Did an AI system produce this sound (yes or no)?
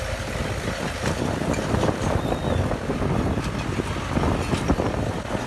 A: no